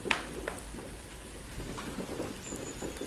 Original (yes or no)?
yes